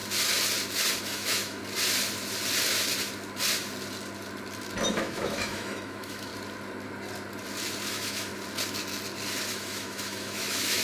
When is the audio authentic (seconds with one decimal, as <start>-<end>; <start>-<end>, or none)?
0.0-1.0; 1.6-4.9; 6.3-7.9; 8.3-9.5